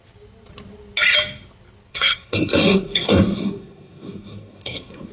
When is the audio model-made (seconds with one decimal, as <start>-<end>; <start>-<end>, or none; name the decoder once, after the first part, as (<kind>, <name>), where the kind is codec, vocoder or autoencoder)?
1.9-5.1 (codec, SNAC)